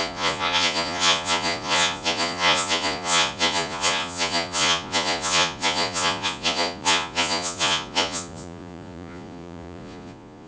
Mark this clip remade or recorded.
remade